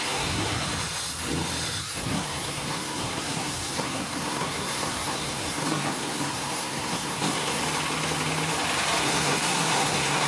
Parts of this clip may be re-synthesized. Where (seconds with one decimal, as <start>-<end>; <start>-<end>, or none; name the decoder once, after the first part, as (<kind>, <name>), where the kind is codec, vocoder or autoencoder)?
0.0-0.7 (codec, SNAC); 1.8-7.6; 9.0-10.3